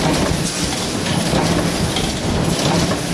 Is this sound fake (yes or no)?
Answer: yes